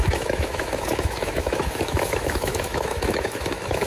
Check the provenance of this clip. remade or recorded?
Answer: remade